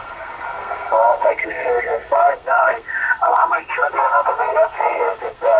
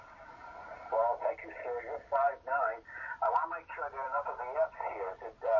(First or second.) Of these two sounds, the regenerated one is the first